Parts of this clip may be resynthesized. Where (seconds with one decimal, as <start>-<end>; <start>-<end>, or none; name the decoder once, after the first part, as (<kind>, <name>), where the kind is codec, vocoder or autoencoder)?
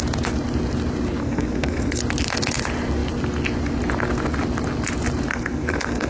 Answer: 1.2-2.0 (codec, SNAC); 5.3-6.1